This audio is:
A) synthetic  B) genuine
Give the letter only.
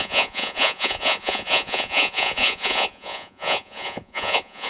A